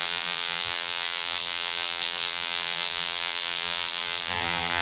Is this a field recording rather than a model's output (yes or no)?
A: no